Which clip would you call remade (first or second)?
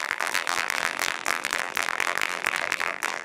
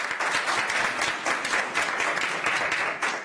first